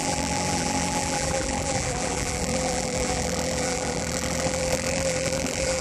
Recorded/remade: remade